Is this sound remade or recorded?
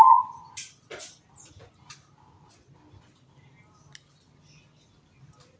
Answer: recorded